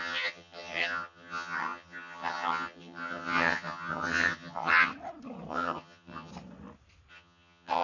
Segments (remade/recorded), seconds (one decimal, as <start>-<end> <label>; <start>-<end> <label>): 0.0-4.9 remade; 4.9-5.5 recorded; 5.5-6.3 remade; 6.3-7.1 recorded; 7.1-7.8 remade